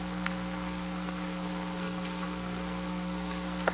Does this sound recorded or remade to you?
remade